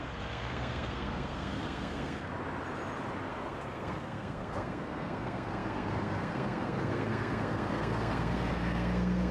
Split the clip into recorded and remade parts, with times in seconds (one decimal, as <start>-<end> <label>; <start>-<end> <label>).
0.0-2.3 remade; 2.3-3.3 recorded; 3.3-9.3 remade